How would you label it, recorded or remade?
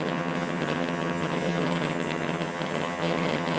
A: remade